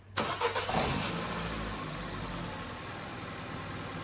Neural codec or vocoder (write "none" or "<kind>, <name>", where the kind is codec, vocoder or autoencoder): none